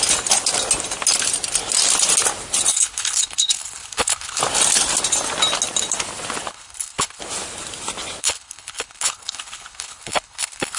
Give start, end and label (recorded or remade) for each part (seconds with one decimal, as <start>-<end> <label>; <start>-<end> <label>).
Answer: 0.0-2.7 recorded; 2.7-4.4 remade; 4.4-6.5 recorded; 6.5-7.2 remade; 7.2-8.2 recorded; 8.2-10.8 remade